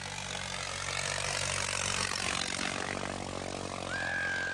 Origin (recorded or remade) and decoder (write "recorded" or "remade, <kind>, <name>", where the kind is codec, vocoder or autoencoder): recorded